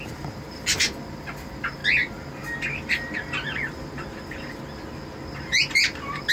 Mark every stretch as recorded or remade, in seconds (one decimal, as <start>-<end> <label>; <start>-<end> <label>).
0.0-1.8 remade; 1.8-5.4 recorded; 5.4-6.3 remade